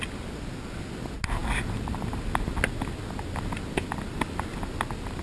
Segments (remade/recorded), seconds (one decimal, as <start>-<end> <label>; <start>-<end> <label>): 0.0-5.2 recorded